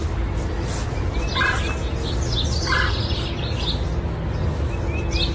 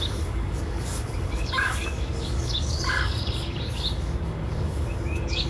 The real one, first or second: first